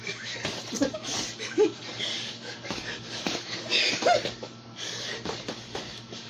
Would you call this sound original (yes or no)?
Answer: no